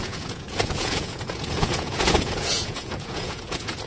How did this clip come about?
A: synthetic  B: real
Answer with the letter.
A